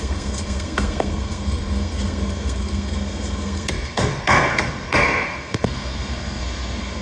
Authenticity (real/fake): fake